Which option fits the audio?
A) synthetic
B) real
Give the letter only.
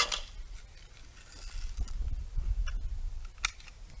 B